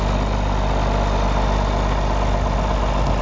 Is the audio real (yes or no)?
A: yes